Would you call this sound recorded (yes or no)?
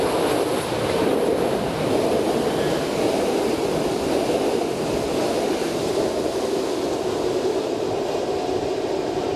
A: yes